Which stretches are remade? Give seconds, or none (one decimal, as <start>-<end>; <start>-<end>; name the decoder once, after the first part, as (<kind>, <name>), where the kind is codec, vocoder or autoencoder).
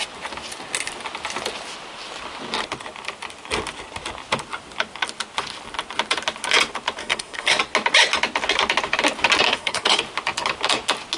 7.0-7.6 (codec, SNAC); 9.5-10.0